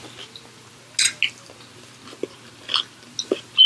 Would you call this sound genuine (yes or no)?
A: yes